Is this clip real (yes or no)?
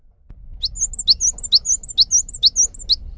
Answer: yes